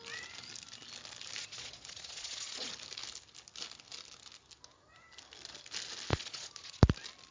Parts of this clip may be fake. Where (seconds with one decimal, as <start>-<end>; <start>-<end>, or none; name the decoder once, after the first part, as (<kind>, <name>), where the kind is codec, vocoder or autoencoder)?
1.4-2.7 (vocoder, Vocos); 6.1-6.8